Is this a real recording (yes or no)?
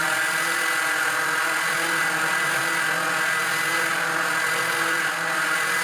yes